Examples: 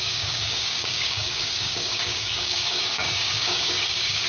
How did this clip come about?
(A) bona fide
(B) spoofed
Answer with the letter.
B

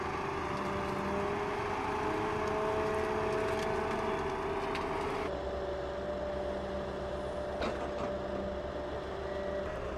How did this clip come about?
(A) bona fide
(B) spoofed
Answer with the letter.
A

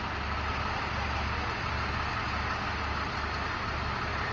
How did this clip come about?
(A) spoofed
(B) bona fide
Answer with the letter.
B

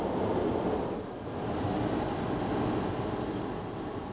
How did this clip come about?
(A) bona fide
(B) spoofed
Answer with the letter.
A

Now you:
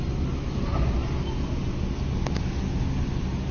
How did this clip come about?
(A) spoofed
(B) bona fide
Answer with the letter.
B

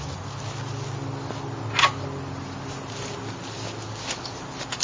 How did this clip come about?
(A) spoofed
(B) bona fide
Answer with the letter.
B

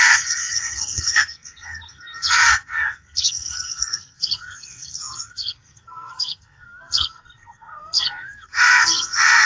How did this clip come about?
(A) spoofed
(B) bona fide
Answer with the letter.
A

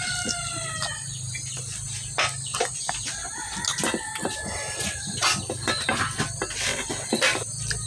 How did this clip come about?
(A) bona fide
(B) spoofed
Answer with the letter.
A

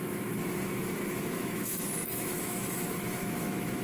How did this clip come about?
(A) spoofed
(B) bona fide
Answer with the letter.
A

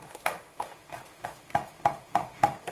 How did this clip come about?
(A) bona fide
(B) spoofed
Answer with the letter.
B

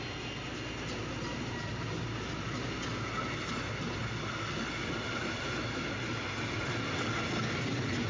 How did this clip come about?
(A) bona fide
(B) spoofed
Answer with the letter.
A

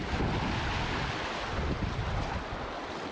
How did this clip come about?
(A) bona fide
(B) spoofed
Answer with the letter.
A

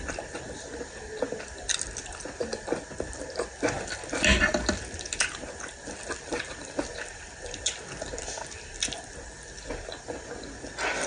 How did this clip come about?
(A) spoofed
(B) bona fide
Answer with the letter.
B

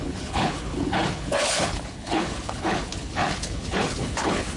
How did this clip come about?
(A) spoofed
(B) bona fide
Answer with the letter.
A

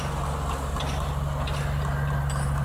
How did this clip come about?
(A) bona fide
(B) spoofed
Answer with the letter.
A